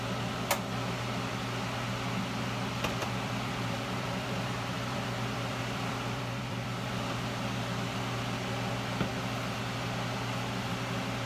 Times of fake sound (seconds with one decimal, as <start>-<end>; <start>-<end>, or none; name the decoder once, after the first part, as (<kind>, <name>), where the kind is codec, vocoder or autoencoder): 3.0-7.0 (vocoder, BigVGAN v2)